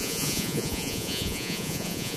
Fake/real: fake